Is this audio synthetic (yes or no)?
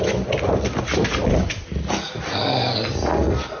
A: no